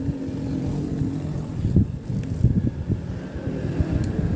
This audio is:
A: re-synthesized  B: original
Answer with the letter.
B